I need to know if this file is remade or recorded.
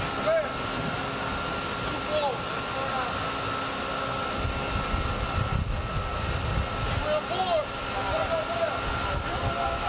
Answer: recorded